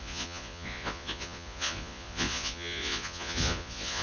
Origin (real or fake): fake